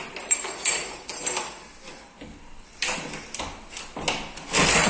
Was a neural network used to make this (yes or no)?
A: no